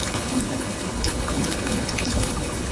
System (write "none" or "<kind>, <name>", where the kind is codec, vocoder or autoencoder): codec, HILCodec